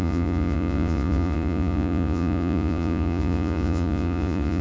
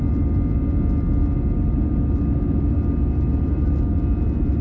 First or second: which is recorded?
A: second